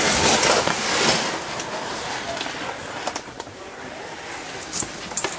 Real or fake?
real